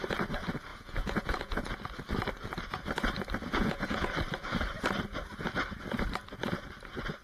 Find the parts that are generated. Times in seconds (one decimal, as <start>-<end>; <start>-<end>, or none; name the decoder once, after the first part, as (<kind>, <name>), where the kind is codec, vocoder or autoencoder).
0.7-1.7 (vocoder, Vocos); 3.5-4.1